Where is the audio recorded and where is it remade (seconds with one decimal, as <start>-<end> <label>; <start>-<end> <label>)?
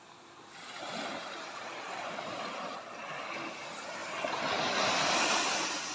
0.0-5.9 recorded